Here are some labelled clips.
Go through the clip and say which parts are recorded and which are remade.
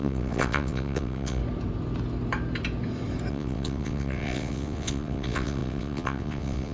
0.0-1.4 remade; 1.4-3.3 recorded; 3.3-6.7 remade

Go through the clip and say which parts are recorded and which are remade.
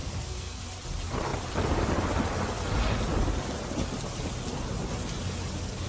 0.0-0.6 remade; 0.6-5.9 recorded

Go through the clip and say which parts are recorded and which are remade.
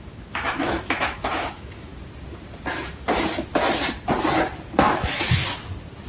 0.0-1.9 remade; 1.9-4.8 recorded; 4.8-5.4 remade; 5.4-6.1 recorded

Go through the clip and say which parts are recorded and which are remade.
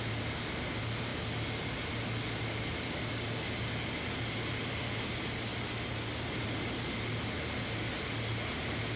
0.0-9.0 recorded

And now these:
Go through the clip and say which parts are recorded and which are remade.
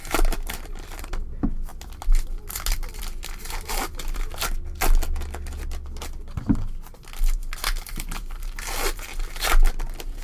0.0-10.2 recorded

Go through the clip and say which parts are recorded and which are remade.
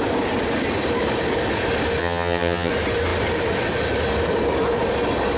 0.0-2.0 recorded; 2.0-2.7 remade; 2.7-5.4 recorded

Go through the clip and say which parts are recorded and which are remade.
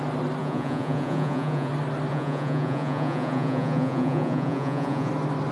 0.0-0.4 recorded; 0.4-1.7 remade; 1.7-2.1 recorded; 2.1-5.1 remade; 5.1-5.5 recorded